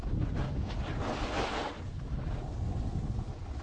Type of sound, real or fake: real